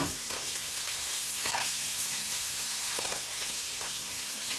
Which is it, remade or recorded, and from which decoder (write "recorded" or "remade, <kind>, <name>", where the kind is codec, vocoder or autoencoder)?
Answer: remade, codec, SNAC